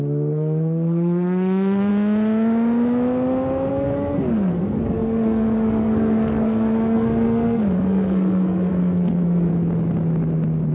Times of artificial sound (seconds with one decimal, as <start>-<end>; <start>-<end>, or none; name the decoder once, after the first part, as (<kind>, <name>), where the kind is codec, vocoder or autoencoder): 0.0-1.9 (codec, SNAC); 3.7-9.5

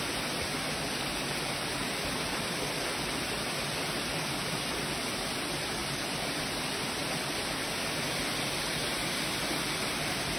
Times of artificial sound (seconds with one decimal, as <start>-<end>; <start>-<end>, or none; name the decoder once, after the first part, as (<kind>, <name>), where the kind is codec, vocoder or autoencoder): 5.8-6.3 (vocoder, BigVGAN v2)

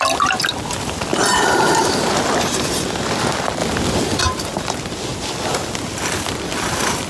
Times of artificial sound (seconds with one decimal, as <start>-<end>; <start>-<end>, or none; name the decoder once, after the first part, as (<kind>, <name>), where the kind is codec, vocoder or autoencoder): none

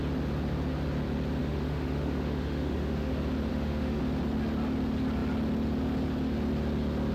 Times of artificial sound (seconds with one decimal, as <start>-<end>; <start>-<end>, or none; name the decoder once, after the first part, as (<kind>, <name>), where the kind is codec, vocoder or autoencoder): 1.4-3.1 (autoencoder, DAC-VAE); 3.5-4.0

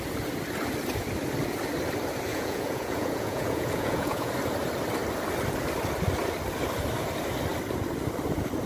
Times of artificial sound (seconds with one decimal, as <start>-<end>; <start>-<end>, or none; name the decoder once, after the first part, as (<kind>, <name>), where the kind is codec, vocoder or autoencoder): 2.3-4.3 (vocoder, Vocos)